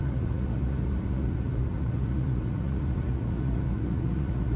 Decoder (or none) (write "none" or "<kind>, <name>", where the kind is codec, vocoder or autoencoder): vocoder, Vocos